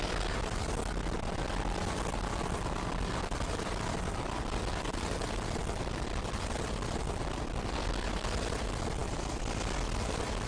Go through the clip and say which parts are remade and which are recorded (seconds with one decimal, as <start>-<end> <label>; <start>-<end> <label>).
0.0-10.5 recorded